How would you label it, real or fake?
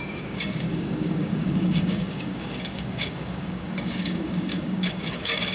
fake